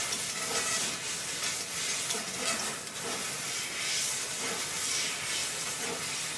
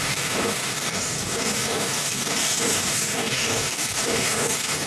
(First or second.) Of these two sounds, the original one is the first